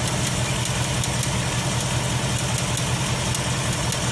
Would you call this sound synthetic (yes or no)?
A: no